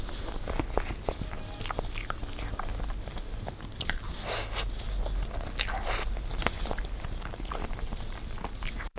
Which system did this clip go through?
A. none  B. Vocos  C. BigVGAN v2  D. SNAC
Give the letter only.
A